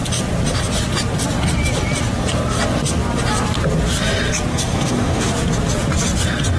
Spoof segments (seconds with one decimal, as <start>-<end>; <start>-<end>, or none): 4.5-5.3